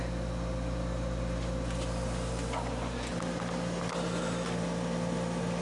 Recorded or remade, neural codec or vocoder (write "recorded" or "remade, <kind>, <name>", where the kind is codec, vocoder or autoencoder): recorded